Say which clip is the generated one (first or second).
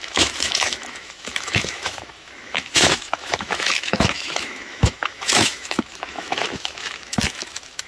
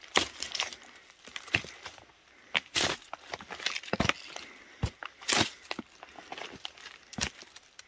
first